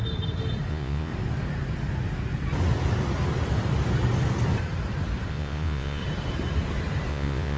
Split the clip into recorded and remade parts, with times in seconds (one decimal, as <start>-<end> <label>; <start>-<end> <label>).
0.0-0.7 recorded; 0.7-1.1 remade; 1.1-5.3 recorded; 5.3-6.0 remade; 6.0-7.1 recorded; 7.1-7.6 remade